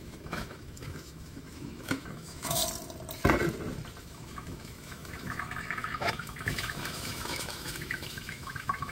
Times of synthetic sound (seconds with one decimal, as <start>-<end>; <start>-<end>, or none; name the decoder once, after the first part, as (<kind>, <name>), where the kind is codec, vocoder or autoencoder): 0.0-2.6 (autoencoder, DAC-VAE); 4.0-8.9